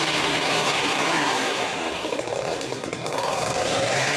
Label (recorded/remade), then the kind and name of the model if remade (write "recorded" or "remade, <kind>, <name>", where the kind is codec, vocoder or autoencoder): remade, codec, SNAC